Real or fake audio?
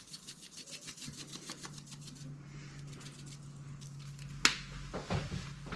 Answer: real